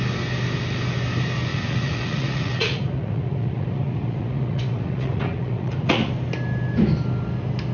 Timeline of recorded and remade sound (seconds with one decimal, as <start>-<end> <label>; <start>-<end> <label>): 0.0-1.5 recorded; 1.5-6.1 remade; 6.1-7.7 recorded